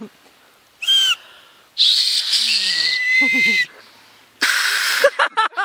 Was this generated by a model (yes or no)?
no